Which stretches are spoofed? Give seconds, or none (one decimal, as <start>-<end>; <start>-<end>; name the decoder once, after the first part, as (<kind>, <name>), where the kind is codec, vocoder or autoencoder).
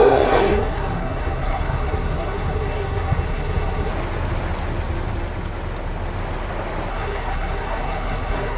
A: 0.0-3.9 (codec, SNAC); 6.9-8.6